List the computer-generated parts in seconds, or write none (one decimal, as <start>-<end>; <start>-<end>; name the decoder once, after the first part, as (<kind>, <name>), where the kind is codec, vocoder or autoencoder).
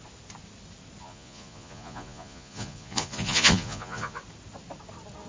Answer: 1.0-4.2 (vocoder, Vocos)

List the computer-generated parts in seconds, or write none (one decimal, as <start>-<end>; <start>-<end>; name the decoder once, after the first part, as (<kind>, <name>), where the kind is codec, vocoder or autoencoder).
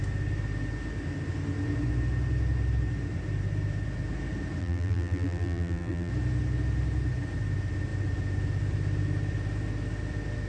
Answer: 4.6-6.1 (vocoder, BigVGAN v2)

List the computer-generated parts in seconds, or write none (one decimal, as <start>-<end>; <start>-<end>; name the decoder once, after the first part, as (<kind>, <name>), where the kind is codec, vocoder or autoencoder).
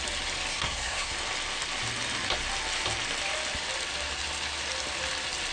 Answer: 0.5-1.1 (codec, SNAC)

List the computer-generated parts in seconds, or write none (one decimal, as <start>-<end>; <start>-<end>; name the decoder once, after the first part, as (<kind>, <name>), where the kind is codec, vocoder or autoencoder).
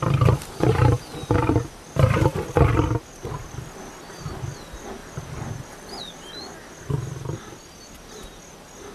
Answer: none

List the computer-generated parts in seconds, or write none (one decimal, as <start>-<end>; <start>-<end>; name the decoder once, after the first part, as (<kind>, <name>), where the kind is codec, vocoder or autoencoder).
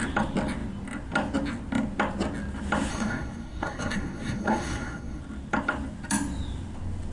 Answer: 2.9-5.2 (codec, SNAC)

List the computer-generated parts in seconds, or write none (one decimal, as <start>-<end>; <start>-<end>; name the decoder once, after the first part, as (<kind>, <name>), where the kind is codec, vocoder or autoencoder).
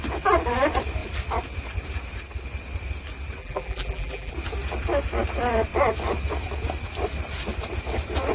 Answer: 3.4-4.3 (vocoder, BigVGAN v2)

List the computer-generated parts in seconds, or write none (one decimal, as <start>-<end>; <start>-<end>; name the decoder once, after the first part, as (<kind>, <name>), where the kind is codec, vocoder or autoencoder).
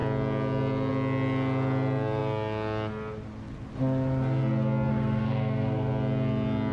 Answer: 4.9-5.9 (codec, SNAC)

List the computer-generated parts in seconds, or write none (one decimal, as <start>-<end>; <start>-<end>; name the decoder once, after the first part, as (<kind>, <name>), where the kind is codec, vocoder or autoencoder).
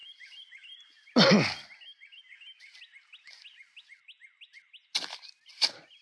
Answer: none